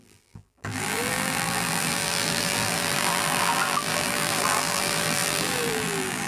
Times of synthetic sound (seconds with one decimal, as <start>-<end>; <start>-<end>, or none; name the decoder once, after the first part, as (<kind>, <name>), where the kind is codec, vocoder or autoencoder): 0.0-6.3 (vocoder, BigVGAN v2)